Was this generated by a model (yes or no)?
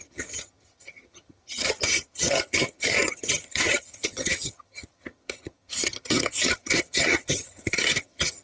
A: yes